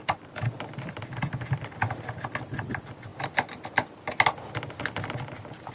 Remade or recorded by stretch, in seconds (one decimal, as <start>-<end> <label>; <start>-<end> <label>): 0.0-5.7 recorded